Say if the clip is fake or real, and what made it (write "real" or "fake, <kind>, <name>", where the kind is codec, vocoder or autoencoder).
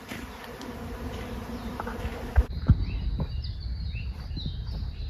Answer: fake, vocoder, BigVGAN v2